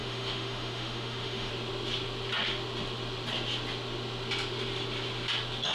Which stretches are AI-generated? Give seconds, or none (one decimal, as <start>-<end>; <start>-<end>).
0.0-1.5